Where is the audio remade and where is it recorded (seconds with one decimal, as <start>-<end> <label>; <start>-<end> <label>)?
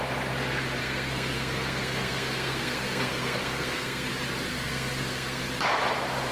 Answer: 0.0-0.8 recorded; 0.8-4.1 remade; 4.1-4.5 recorded; 4.5-5.4 remade; 5.4-6.3 recorded